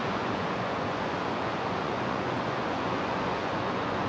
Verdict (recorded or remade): remade